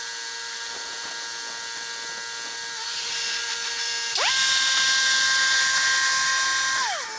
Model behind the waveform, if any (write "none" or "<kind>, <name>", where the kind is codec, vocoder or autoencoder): none